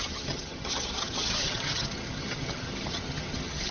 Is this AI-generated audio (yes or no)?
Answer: yes